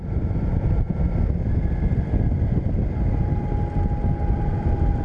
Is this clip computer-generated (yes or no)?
no